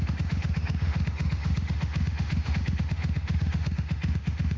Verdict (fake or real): fake